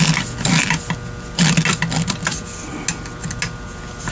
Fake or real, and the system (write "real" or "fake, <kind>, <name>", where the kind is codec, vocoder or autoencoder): real